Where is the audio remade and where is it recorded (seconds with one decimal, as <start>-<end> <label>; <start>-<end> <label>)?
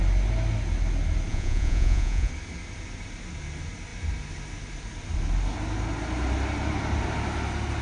0.0-1.3 recorded; 1.3-2.3 remade; 2.3-7.8 recorded